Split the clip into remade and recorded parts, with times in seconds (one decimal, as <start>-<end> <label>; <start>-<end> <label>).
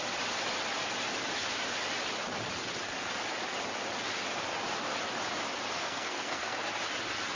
0.0-5.8 recorded; 5.8-6.7 remade; 6.7-7.4 recorded